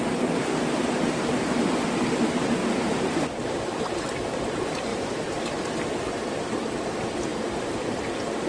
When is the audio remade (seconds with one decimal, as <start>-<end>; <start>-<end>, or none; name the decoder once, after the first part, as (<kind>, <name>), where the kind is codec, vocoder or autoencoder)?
2.6-3.8 (vocoder, BigVGAN v2); 4.9-6.4; 7.3-8.1